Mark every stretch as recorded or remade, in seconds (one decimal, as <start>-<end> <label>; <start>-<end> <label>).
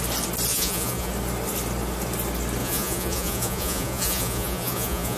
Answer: 0.0-0.5 recorded; 0.5-1.1 remade; 1.1-2.6 recorded; 2.6-5.2 remade